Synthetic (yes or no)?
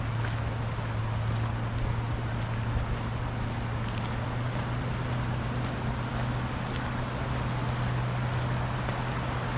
no